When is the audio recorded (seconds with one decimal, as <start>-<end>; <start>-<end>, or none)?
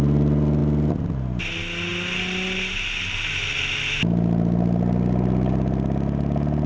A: 0.0-6.7